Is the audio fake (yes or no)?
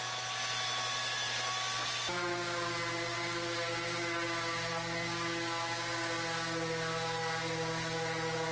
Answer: no